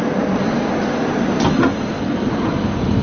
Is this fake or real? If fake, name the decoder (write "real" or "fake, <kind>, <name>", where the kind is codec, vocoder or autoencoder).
real